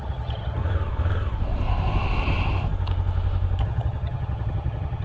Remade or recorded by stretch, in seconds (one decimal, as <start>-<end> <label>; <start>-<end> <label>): 0.0-0.6 remade; 0.6-3.6 recorded; 3.6-5.0 remade